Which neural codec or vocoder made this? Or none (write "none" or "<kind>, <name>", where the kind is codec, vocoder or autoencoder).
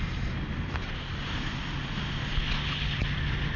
none